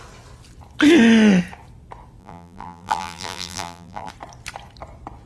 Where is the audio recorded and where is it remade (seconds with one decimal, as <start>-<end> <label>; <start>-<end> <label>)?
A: 0.0-2.2 recorded; 2.2-4.1 remade; 4.1-5.3 recorded